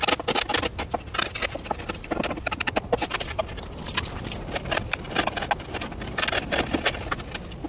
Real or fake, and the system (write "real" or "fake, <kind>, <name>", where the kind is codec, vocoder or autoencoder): real